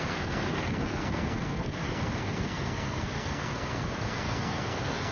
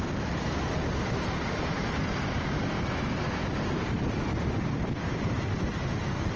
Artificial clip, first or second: first